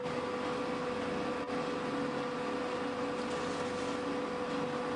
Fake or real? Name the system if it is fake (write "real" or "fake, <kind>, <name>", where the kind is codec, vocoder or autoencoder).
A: real